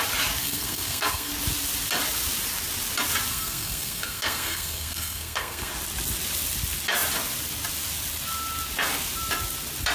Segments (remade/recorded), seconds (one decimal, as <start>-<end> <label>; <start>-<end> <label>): 0.0-0.4 recorded; 0.4-1.3 remade; 1.3-3.3 recorded; 3.3-5.7 remade; 5.7-9.9 recorded